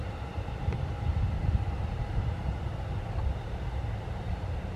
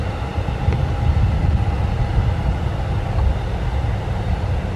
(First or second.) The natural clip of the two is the second